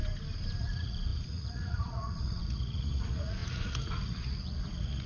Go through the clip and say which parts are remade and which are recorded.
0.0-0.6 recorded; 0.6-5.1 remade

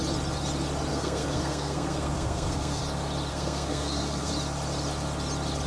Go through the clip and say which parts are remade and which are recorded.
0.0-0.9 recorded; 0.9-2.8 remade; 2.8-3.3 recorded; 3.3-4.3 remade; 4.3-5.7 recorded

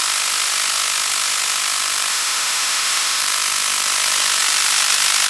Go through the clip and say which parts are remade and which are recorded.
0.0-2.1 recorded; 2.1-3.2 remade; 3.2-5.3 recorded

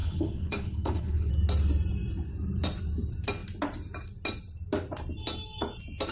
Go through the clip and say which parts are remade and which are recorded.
0.0-1.3 remade; 1.3-6.1 recorded

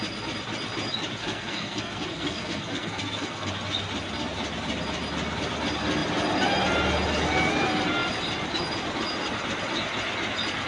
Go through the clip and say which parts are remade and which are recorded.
0.0-1.2 recorded; 1.2-3.5 remade; 3.5-10.7 recorded